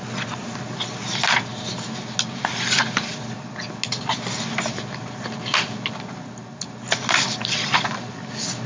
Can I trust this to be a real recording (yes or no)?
yes